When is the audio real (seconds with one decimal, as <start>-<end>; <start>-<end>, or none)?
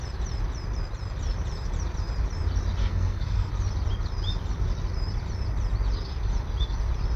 0.0-2.8; 3.5-7.2